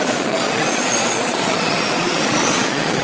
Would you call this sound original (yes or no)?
no